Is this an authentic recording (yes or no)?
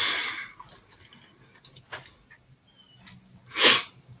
yes